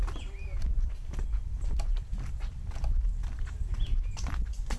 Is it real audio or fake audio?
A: real